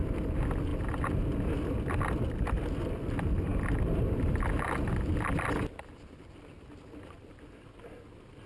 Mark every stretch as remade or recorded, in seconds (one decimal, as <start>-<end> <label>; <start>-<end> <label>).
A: 0.0-8.5 recorded